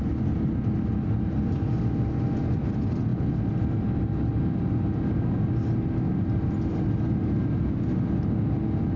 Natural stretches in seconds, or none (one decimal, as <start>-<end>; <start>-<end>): 0.0-9.0